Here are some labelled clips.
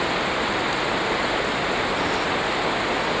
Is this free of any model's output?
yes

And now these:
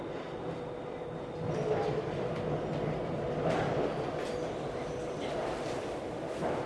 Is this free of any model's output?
yes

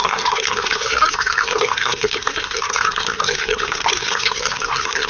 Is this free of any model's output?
no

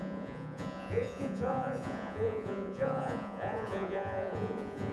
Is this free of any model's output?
no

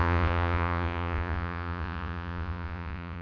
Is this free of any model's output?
no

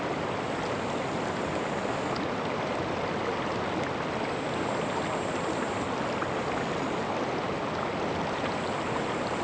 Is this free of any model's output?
yes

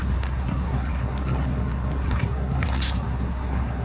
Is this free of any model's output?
no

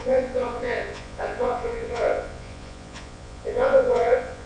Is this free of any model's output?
no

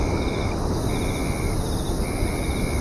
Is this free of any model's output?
yes